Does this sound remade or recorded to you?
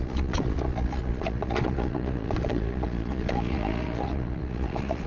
remade